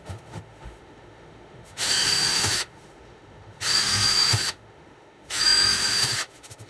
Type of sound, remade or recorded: remade